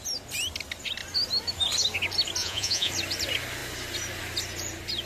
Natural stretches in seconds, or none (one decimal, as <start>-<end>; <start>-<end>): 0.0-2.4; 2.9-5.1